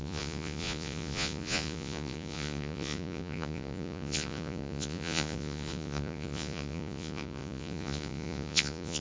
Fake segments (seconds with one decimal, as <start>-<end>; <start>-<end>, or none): 0.0-9.0

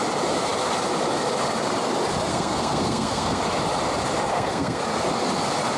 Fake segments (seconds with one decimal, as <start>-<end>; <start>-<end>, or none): 2.3-3.4; 4.3-4.8

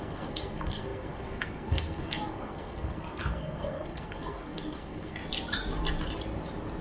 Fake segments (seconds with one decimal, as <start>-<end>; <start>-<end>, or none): 0.0-5.2